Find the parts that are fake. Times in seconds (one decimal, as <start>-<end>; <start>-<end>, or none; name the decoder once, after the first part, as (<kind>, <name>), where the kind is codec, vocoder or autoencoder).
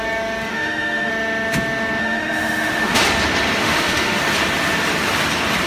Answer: 0.5-1.1 (autoencoder, DAC-VAE); 2.0-3.0; 3.6-4.2